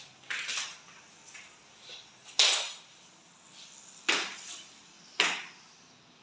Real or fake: real